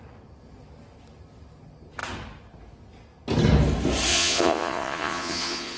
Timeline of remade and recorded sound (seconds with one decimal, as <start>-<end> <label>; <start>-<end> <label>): 0.0-4.1 recorded; 4.1-5.8 remade